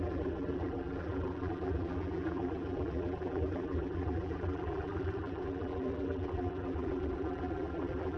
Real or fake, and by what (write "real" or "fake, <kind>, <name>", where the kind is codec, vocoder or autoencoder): fake, vocoder, BigVGAN v2